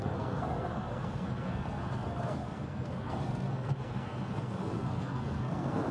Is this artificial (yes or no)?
yes